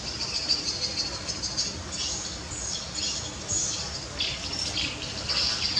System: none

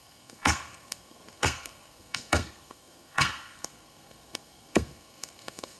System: codec, SNAC